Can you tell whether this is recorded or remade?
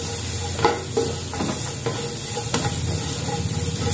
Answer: recorded